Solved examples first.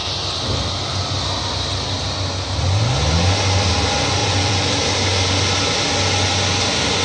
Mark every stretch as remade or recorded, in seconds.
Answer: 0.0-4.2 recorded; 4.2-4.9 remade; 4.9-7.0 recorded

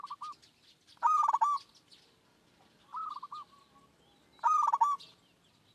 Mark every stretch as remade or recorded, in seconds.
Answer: 0.0-5.7 recorded